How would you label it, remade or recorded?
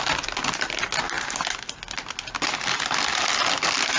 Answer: recorded